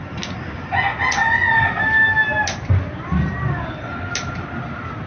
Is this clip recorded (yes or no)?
yes